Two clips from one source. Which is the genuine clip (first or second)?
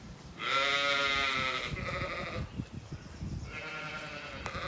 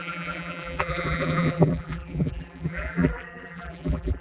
first